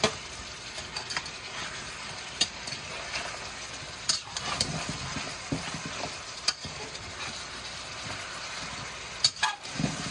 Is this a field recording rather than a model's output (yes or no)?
yes